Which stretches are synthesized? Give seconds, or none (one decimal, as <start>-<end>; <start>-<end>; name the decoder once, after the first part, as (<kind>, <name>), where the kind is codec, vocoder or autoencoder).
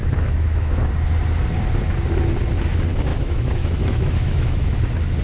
0.0-0.8 (autoencoder, DAC-VAE); 3.1-4.8